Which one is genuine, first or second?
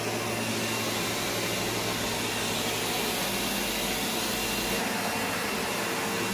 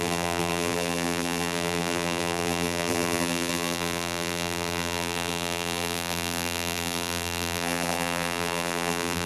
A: first